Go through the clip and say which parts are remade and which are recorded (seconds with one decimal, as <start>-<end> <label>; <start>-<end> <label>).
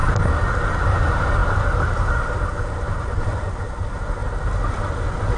0.0-0.5 recorded; 0.5-4.2 remade; 4.2-5.4 recorded